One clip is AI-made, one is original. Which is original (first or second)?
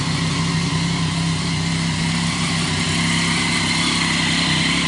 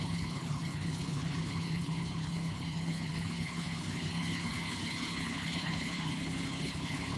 first